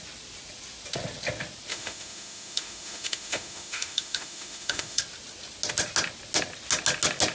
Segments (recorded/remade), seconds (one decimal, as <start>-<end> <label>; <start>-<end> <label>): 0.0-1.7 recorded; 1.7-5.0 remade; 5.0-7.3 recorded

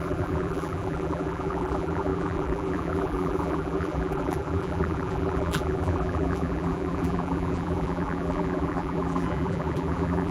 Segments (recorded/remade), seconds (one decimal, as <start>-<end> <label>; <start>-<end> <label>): 0.0-10.3 remade

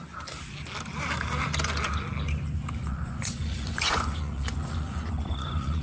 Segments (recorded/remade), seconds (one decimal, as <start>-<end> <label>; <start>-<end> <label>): 0.0-2.8 recorded; 2.8-5.8 remade

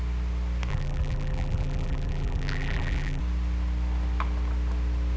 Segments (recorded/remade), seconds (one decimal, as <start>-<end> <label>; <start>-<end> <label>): 0.0-0.7 recorded; 0.7-3.2 remade; 3.2-5.2 recorded